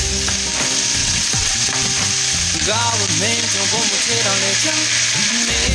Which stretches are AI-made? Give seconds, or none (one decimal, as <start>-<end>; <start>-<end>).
1.0-1.7